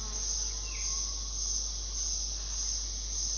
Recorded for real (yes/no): yes